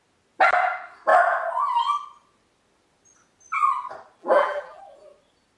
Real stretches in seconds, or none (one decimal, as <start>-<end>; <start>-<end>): 0.0-4.2; 4.8-5.6